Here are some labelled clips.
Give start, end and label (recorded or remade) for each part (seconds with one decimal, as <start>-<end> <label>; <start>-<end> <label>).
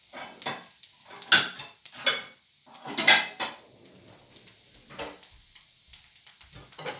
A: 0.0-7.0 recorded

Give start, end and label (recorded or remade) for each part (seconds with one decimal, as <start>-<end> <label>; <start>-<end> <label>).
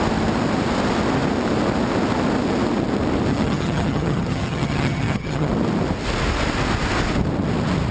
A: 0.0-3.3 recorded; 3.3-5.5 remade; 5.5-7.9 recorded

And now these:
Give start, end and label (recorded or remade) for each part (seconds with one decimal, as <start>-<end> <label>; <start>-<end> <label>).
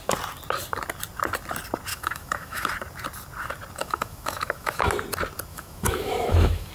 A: 0.0-1.9 recorded; 1.9-2.7 remade; 2.7-3.8 recorded; 3.8-4.9 remade; 4.9-5.5 recorded; 5.5-6.7 remade